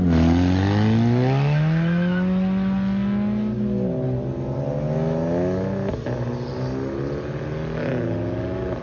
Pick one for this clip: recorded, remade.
recorded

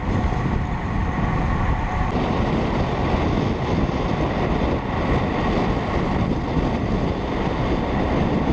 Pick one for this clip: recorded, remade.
recorded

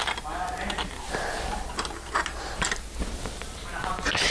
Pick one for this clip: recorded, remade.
recorded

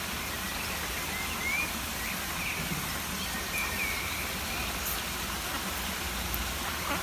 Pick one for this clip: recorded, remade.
recorded